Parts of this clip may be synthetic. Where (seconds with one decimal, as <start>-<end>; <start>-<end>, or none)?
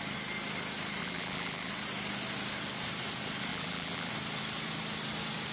1.0-1.7; 3.5-4.1